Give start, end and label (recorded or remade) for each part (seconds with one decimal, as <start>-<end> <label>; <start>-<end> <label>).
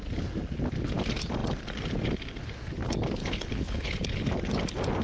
0.0-3.2 recorded; 3.2-4.3 remade; 4.3-5.0 recorded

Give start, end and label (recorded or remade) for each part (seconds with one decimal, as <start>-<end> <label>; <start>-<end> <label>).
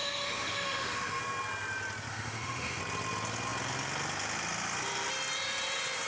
0.0-1.2 remade; 1.2-2.1 recorded; 2.1-2.8 remade; 2.8-6.1 recorded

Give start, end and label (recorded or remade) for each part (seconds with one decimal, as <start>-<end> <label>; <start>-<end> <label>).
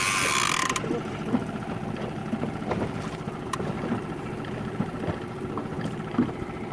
0.0-6.7 recorded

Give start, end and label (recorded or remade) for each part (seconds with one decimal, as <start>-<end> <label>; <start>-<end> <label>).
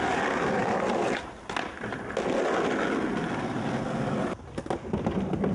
0.0-5.5 recorded